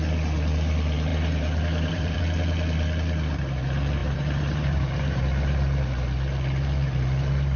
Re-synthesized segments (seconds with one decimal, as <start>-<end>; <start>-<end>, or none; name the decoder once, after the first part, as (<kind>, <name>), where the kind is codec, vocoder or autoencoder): 1.1-2.2 (vocoder, BigVGAN v2); 4.0-5.2